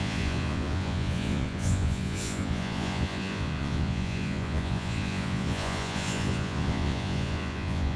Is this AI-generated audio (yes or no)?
yes